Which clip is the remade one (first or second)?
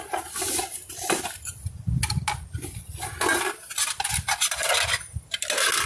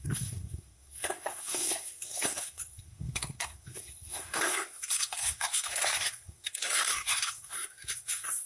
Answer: second